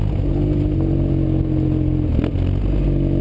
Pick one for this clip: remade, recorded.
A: recorded